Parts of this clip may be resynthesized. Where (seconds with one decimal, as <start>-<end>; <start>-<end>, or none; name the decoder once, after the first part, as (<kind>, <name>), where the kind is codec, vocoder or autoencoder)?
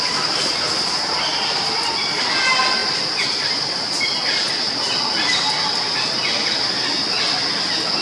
1.3-1.9 (vocoder, BigVGAN v2); 2.8-4.0; 6.2-6.7